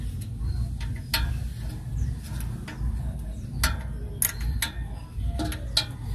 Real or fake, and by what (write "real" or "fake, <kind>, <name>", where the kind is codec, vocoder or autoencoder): real